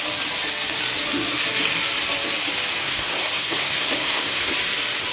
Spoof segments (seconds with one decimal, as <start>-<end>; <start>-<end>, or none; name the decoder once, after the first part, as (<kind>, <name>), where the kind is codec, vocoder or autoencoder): 2.8-4.5 (codec, SNAC)